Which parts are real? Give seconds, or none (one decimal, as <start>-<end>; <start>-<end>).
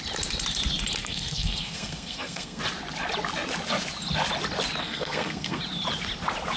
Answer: 0.0-1.0; 2.6-4.8; 5.6-6.6